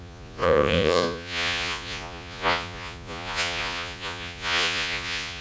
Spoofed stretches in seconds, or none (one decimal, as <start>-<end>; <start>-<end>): 0.0-5.4